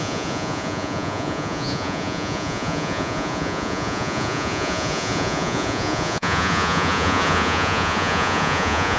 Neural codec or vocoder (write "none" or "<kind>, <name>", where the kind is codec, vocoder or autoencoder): vocoder, Vocos